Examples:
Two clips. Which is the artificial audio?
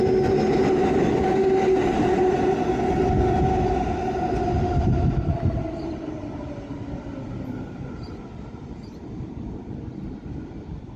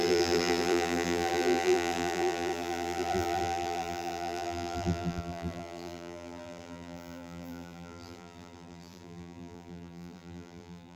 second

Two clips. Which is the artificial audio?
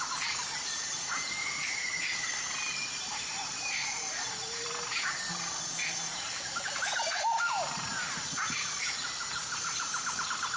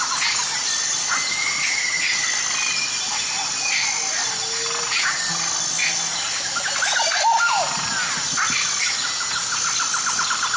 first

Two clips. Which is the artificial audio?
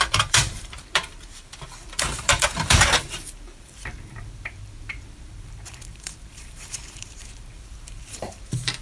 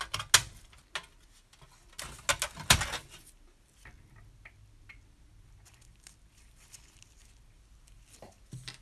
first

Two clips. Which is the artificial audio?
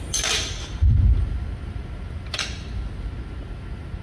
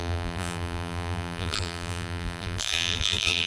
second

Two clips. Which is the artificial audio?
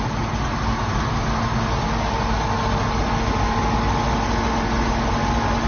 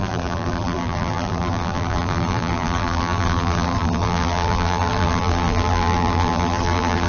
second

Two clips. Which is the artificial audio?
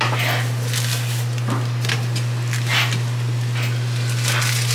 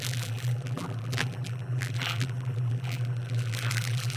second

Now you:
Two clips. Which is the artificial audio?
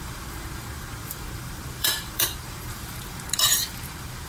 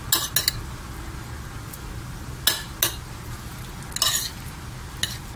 first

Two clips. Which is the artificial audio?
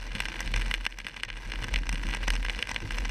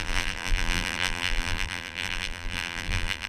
second